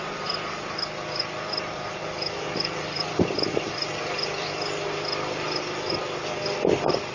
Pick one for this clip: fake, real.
fake